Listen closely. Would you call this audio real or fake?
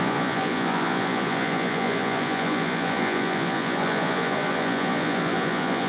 fake